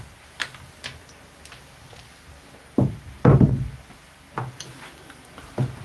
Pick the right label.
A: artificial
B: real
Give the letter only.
B